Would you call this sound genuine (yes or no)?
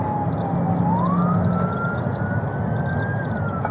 yes